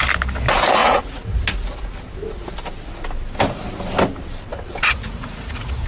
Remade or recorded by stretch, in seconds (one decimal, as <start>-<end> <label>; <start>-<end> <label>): 0.0-0.8 recorded; 0.8-1.4 remade; 1.4-4.5 recorded; 4.5-5.9 remade